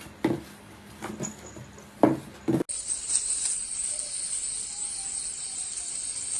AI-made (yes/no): no